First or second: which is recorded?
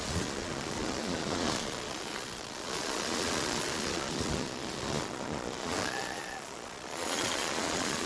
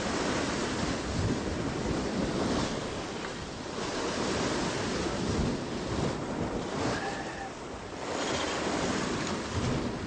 second